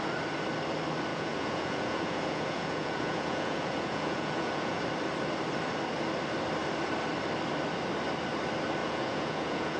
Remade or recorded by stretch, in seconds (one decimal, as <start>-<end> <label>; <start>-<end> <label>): 0.0-1.1 recorded; 1.1-4.8 remade; 4.8-8.8 recorded; 8.8-9.8 remade